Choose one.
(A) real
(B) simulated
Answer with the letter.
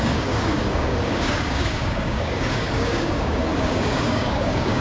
B